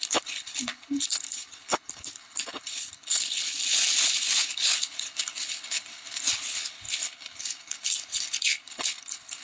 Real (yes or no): no